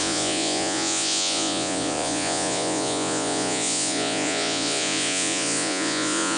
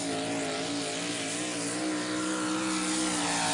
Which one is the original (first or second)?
second